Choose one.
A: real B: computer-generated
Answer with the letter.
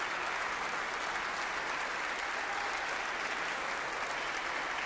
A